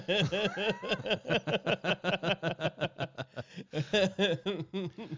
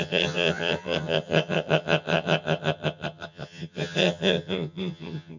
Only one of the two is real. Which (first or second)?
first